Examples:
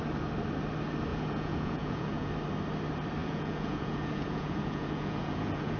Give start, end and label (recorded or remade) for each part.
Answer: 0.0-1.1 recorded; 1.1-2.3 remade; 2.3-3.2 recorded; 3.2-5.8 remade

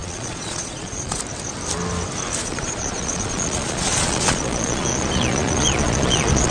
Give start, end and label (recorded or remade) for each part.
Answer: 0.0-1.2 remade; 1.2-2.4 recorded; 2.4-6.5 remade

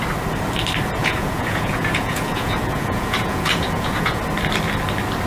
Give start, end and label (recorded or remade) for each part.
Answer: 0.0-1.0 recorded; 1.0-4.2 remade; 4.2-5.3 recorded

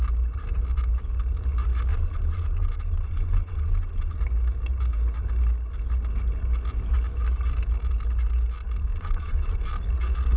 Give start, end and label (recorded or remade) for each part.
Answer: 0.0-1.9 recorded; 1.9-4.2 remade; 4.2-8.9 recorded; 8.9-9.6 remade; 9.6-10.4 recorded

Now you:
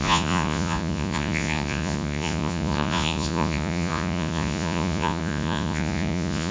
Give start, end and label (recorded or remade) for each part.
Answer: 0.0-6.5 remade

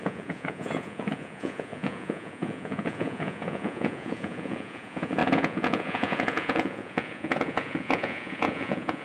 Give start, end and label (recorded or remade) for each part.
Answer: 0.0-9.0 remade

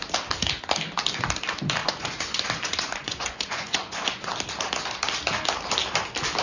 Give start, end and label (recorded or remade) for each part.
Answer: 0.0-1.8 recorded; 1.8-4.3 remade; 4.3-6.4 recorded